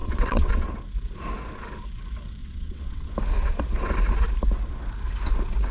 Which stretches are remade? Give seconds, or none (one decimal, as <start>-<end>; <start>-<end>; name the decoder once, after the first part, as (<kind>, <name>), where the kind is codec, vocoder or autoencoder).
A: 0.0-0.7 (vocoder, WaveNeXt); 2.4-3.1